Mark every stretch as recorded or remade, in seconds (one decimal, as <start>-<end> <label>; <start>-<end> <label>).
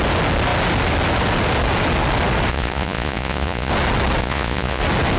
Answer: 0.0-2.5 recorded; 2.5-3.7 remade; 3.7-4.2 recorded; 4.2-4.8 remade; 4.8-5.2 recorded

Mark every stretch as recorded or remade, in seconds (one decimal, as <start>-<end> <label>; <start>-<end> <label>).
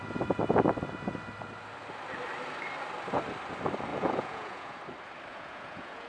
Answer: 0.0-3.9 recorded; 3.9-4.8 remade; 4.8-5.3 recorded; 5.3-6.1 remade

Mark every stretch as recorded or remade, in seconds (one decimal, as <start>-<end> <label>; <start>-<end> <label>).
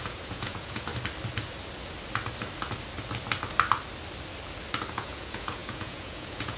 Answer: 0.0-0.9 remade; 0.9-4.9 recorded; 4.9-6.6 remade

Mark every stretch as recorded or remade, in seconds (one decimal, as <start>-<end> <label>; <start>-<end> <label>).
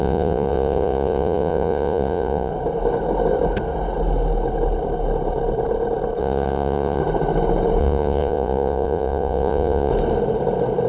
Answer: 0.0-2.5 remade; 2.5-6.2 recorded; 6.2-7.0 remade; 7.0-7.8 recorded; 7.8-9.9 remade; 9.9-10.9 recorded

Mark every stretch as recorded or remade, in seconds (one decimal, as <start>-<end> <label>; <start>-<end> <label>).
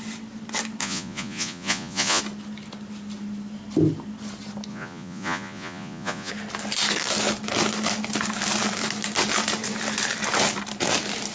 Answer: 0.0-0.8 recorded; 0.8-2.2 remade; 2.2-4.7 recorded; 4.7-6.3 remade; 6.3-11.3 recorded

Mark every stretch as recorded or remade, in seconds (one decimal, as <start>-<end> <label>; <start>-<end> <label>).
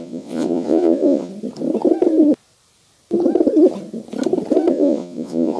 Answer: 0.0-1.3 remade; 1.3-4.7 recorded; 4.7-5.6 remade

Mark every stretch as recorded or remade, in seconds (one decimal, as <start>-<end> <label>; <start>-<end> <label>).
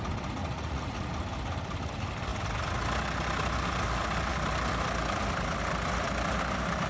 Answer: 0.0-0.4 recorded; 0.4-1.1 remade; 1.1-6.9 recorded